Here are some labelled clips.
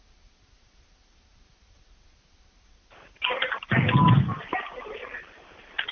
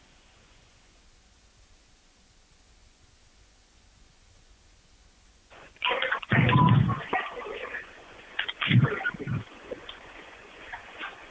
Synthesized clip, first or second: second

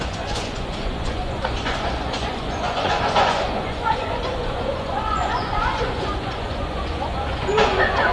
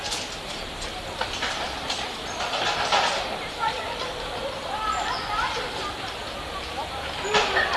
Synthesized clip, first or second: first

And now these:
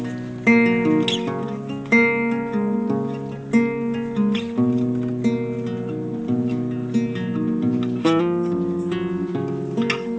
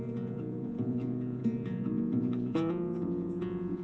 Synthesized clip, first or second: second